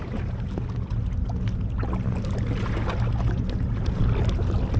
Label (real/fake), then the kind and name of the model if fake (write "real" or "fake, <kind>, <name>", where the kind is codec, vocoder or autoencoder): real